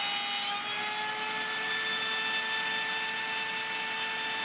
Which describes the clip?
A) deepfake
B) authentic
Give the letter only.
B